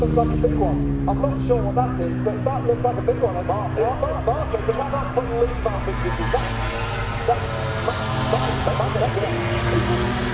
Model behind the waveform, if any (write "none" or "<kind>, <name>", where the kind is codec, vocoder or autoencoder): none